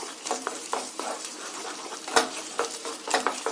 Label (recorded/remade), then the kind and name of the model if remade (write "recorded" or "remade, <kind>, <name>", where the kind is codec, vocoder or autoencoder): remade, vocoder, BigVGAN v2